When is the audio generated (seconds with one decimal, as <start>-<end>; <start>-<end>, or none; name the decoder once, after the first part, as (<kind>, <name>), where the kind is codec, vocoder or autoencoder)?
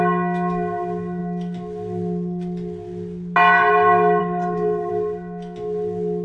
4.2-4.9 (codec, SNAC)